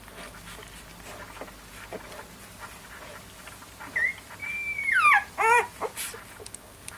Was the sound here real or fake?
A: real